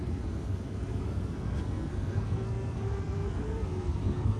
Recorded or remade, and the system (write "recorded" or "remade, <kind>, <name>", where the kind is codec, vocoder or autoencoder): remade, codec, SNAC